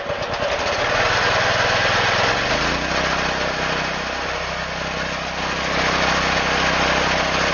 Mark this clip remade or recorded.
recorded